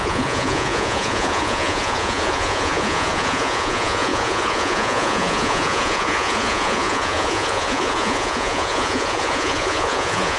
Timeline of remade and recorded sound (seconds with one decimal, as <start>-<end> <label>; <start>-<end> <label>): 0.0-10.4 remade